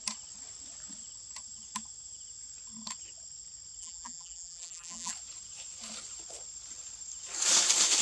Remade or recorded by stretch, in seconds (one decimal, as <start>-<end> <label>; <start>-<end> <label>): 0.0-3.8 recorded; 3.8-5.1 remade; 5.1-8.0 recorded